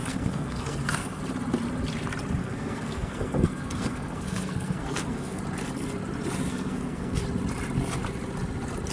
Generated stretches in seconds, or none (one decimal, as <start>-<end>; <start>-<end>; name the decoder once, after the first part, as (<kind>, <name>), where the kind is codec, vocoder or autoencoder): 0.0-1.2 (codec, SNAC); 2.4-5.4; 6.5-7.2